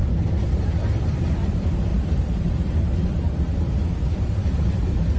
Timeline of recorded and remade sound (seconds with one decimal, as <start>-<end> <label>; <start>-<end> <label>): 0.0-1.2 remade; 1.2-1.9 recorded; 1.9-5.2 remade